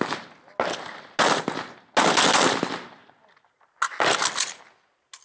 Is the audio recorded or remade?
recorded